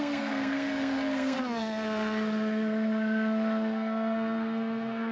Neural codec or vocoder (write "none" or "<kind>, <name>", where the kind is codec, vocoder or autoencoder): codec, SNAC